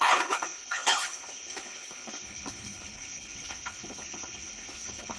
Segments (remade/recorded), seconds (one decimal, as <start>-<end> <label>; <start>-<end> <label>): 0.0-5.2 remade